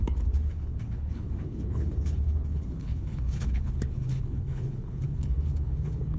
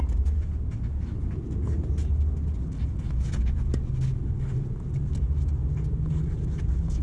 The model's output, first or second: first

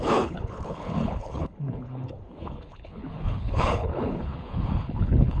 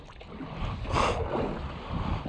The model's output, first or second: first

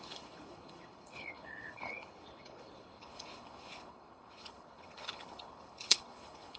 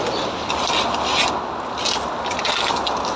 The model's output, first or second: first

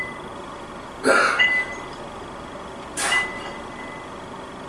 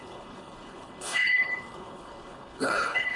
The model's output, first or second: second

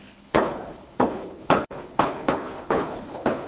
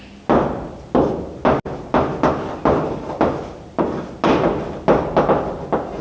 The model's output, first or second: first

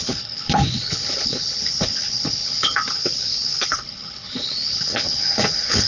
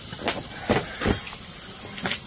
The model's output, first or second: first